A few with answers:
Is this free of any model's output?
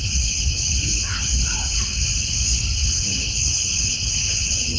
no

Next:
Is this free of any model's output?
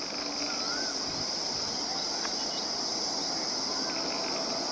yes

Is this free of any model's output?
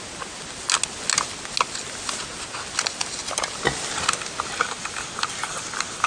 yes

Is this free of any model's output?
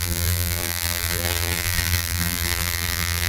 no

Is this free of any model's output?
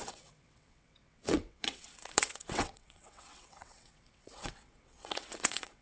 no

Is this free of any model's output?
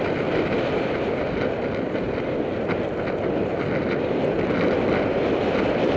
yes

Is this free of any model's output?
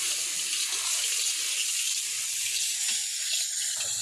yes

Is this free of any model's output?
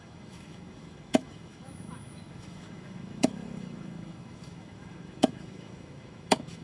no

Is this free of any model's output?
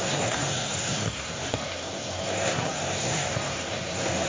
no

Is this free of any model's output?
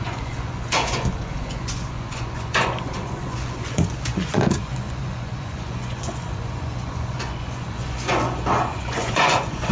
no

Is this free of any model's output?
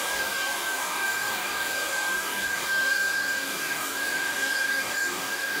no